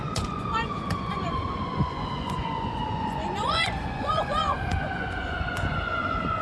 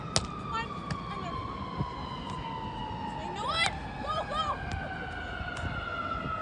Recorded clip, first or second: second